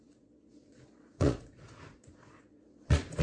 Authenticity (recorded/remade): remade